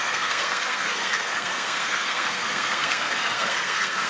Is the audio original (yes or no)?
no